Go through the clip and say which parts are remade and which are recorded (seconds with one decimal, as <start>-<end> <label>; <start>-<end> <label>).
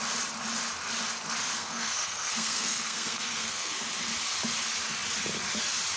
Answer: 0.0-1.5 recorded; 1.5-3.7 remade; 3.7-6.0 recorded